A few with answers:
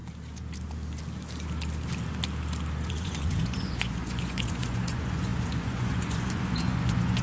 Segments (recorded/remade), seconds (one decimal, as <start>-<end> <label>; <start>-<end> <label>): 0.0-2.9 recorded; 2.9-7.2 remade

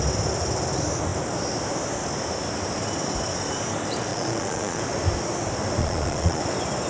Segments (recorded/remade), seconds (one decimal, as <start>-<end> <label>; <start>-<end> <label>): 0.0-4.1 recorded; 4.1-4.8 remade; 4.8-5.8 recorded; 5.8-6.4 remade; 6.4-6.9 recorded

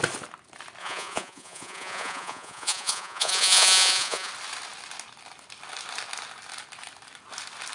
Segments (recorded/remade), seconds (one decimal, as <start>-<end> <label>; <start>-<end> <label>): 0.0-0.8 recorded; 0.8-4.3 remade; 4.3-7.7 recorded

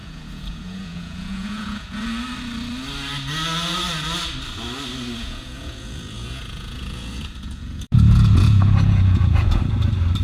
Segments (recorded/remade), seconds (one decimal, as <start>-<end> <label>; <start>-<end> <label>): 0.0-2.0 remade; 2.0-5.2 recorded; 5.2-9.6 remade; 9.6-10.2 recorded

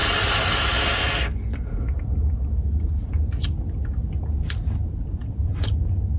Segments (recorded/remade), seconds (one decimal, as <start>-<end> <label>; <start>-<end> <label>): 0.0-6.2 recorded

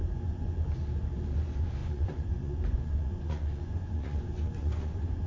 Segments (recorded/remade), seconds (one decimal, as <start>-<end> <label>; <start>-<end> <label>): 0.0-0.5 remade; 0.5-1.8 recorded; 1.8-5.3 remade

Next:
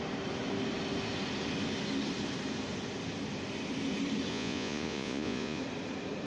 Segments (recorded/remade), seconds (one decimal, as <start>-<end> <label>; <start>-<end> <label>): 0.0-4.3 recorded; 4.3-5.6 remade; 5.6-6.3 recorded